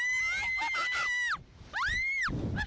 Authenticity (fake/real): real